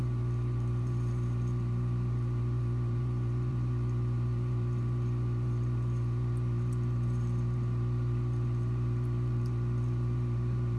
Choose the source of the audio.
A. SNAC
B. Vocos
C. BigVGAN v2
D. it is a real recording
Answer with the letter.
C